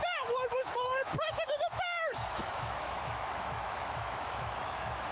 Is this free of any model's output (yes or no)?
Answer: no